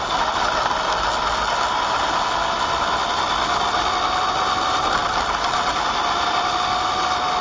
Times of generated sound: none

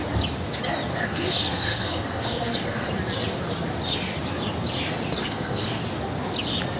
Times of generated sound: 0.9-2.9 (codec, SNAC); 5.2-5.8

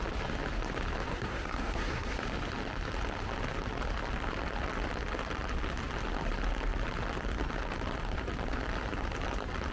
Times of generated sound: 1.1-2.2 (codec, SNAC)

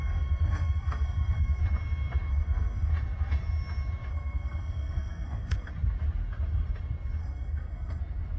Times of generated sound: 0.0-1.6 (codec, SNAC); 2.3-2.9; 4.1-5.7; 7.2-8.0

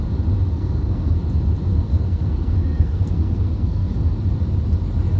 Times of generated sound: 0.5-1.2 (codec, SNAC); 1.7-4.0

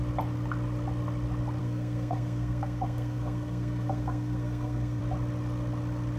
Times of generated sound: 1.6-5.0 (codec, SNAC)

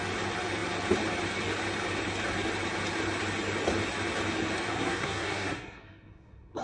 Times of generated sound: 4.7-6.6 (codec, SNAC)